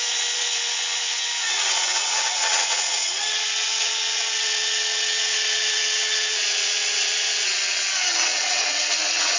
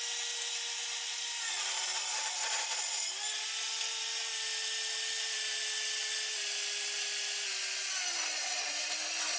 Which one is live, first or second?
second